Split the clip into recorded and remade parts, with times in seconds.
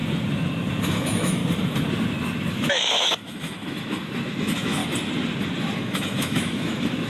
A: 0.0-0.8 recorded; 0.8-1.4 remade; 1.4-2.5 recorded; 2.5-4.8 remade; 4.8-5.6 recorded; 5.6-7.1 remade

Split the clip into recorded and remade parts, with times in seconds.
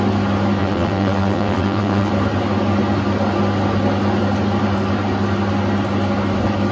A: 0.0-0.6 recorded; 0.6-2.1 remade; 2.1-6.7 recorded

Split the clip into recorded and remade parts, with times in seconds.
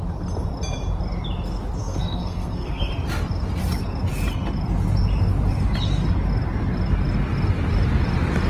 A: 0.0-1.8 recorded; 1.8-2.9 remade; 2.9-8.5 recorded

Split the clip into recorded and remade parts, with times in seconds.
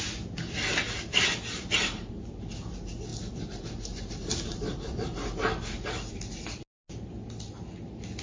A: 0.0-1.1 recorded; 1.1-2.1 remade; 2.1-3.1 recorded; 3.1-6.1 remade; 6.1-8.2 recorded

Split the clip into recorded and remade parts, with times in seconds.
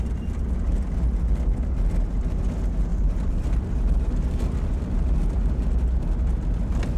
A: 0.0-2.9 recorded; 2.9-5.1 remade; 5.1-7.0 recorded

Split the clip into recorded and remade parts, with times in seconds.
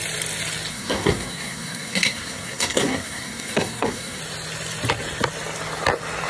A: 0.0-0.7 recorded; 0.7-4.2 remade; 4.2-6.3 recorded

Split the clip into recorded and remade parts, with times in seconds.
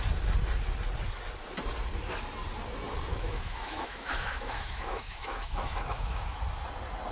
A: 0.0-3.1 recorded; 3.1-6.4 remade; 6.4-7.1 recorded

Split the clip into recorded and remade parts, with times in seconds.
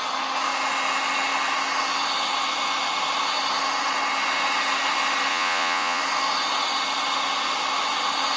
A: 0.0-5.3 recorded; 5.3-6.0 remade; 6.0-8.4 recorded